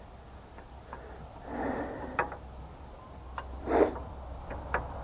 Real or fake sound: real